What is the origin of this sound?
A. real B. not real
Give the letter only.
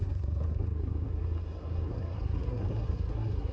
B